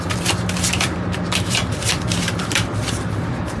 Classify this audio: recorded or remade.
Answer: remade